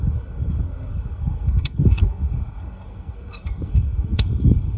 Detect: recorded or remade remade